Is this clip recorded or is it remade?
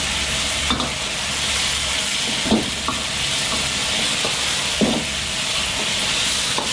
recorded